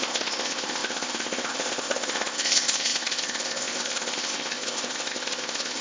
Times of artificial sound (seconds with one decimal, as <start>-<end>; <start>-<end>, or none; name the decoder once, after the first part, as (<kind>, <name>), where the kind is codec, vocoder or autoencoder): 0.0-5.8 (codec, ZipCodec)